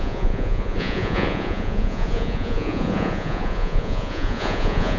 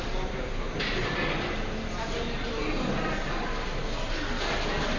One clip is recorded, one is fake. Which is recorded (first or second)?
second